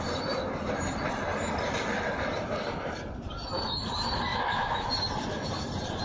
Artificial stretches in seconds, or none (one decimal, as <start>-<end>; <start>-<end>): 4.3-4.9